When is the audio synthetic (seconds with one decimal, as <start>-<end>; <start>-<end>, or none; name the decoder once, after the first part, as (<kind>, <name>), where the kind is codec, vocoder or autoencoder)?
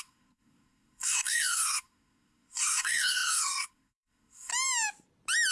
0.0-4.5 (codec, SNAC)